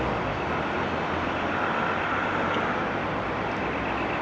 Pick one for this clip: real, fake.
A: real